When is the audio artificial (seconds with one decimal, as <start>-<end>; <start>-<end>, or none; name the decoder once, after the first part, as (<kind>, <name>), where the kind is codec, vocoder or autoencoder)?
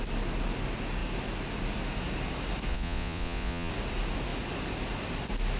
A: 2.7-3.7 (vocoder, Vocos)